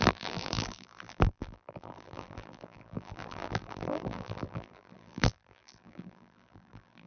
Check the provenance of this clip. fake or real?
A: fake